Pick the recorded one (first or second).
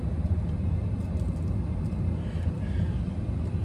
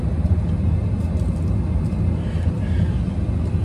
second